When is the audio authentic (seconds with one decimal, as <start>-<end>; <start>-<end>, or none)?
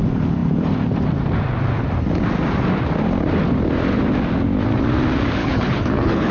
0.0-5.4